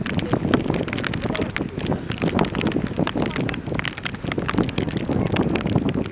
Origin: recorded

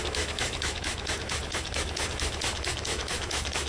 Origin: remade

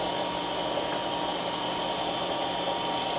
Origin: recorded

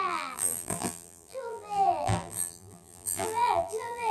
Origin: remade